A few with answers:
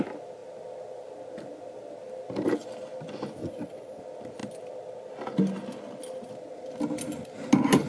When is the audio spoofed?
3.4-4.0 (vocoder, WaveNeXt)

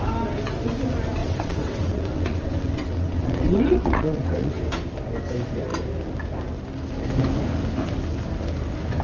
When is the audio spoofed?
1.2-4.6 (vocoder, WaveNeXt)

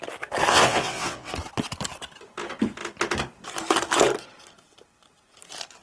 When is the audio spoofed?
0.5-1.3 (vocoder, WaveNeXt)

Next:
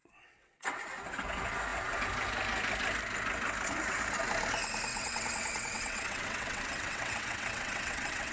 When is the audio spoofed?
0.0-0.8 (vocoder, WaveNeXt); 4.9-8.3

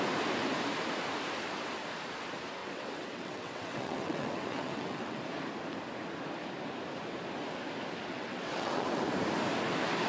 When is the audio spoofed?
2.6-5.2 (vocoder, WaveNeXt); 8.1-9.0

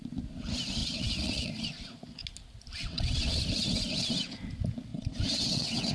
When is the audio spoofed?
0.8-1.5 (vocoder, WaveNeXt); 2.8-3.4; 4.9-5.9

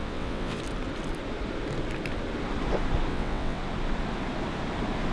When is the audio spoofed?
0.0-0.6 (vocoder, WaveNeXt); 3.1-3.6